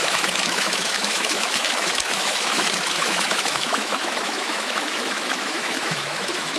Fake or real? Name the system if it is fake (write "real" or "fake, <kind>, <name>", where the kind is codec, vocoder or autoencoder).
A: fake, autoencoder, DAC-VAE